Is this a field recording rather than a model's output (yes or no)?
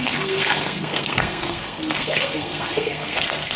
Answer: no